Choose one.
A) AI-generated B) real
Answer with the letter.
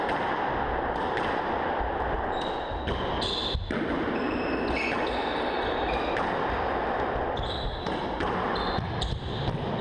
B